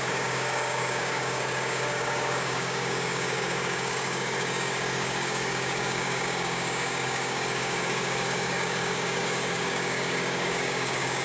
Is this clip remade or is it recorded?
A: remade